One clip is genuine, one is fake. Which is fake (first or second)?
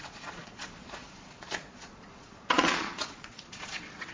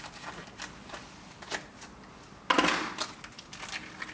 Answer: first